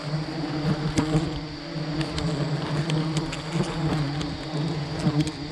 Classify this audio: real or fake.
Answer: real